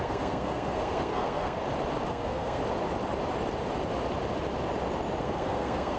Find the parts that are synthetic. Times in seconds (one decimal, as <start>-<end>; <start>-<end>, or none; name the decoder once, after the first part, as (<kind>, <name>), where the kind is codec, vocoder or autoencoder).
0.0-1.6 (codec, SNAC); 2.1-2.6; 5.2-6.0